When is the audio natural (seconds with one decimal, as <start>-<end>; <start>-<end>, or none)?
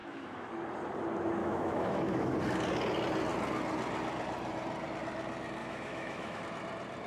0.5-1.4; 2.4-5.6; 6.4-7.1